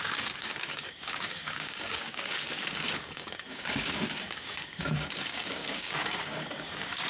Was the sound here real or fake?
fake